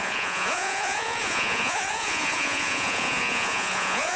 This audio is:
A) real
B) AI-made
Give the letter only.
B